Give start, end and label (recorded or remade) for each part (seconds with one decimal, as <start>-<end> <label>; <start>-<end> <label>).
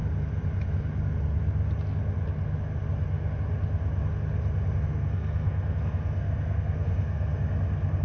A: 0.0-4.8 recorded; 4.8-7.3 remade; 7.3-8.0 recorded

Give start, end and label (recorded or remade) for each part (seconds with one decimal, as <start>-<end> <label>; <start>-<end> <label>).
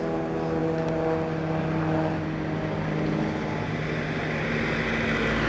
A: 0.0-5.5 recorded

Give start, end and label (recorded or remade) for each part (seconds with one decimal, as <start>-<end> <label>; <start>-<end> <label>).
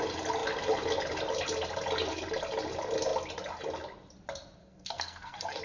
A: 0.0-4.6 recorded; 4.6-5.6 remade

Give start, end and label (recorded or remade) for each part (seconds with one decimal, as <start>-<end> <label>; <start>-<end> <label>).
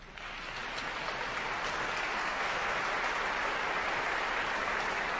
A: 0.0-2.2 recorded; 2.2-2.8 remade; 2.8-5.2 recorded